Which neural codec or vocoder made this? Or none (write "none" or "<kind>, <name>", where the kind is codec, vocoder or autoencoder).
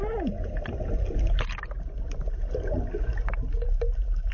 none